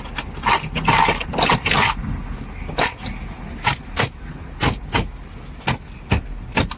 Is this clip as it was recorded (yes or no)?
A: yes